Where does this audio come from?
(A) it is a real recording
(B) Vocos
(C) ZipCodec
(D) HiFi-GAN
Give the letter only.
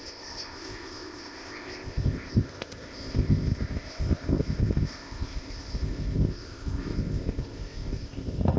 C